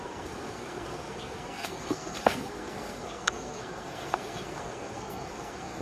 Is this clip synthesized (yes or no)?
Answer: yes